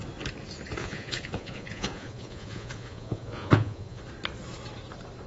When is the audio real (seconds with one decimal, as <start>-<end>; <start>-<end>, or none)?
0.0-0.8; 4.0-5.3